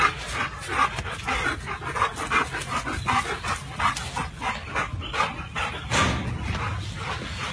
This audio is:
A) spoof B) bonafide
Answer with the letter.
B